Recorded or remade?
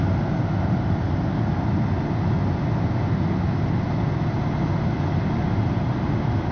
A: recorded